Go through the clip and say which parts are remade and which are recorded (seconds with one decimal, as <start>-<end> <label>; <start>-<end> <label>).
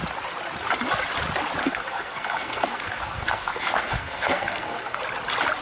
0.0-1.6 recorded; 1.6-5.0 remade; 5.0-5.6 recorded